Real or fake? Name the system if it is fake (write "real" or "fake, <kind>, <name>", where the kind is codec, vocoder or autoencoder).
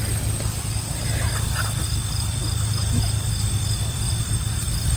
real